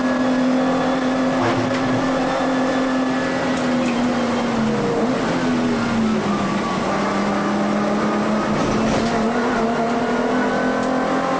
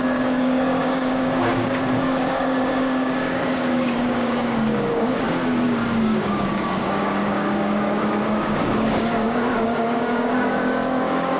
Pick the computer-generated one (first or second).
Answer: second